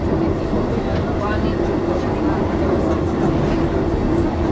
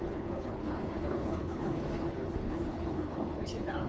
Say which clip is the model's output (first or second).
second